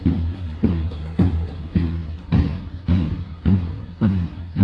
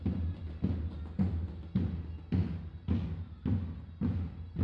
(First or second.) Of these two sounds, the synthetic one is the first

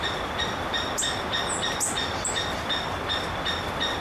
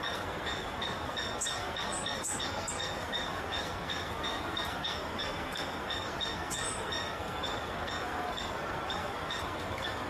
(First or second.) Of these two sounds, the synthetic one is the second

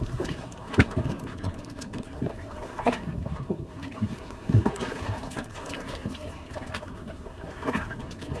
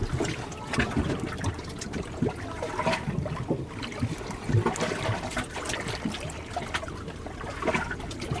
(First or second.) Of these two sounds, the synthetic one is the first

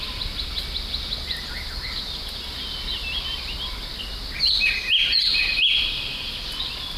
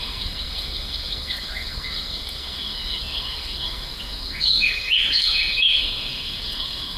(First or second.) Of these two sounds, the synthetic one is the second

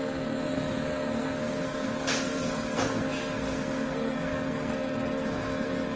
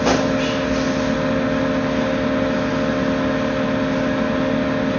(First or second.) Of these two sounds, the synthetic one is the first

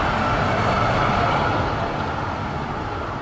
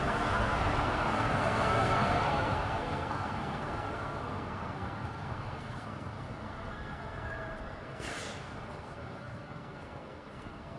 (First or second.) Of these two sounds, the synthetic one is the second